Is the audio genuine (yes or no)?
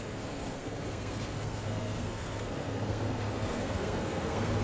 no